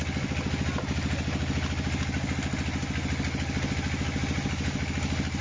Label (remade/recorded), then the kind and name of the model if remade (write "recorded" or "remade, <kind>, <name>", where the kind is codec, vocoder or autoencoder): recorded